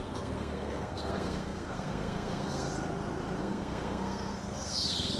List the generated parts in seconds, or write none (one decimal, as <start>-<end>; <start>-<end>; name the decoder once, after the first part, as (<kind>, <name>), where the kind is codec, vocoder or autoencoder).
0.0-2.7 (codec, SNAC); 3.4-5.2